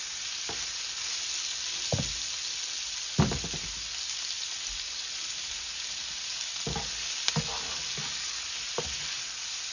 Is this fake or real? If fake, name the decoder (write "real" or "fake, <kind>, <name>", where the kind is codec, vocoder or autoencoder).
real